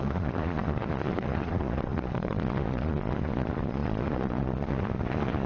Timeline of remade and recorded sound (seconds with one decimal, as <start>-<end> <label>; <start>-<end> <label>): 0.0-5.5 remade